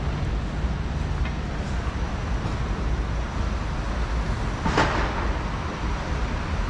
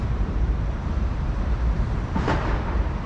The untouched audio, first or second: first